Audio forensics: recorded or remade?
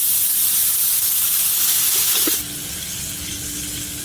recorded